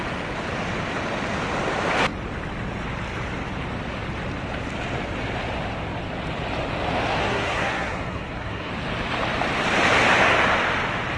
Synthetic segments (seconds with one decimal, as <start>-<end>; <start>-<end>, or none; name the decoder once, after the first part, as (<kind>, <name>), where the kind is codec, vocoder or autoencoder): 7.2-8.7 (codec, SNAC)